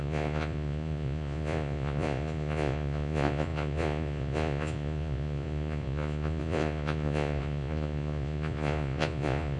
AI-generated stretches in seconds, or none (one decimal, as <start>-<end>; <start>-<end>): 0.0-9.6